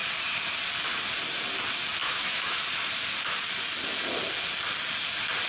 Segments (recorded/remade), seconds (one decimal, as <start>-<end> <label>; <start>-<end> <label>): 0.0-2.0 recorded; 2.0-2.6 remade; 2.6-5.5 recorded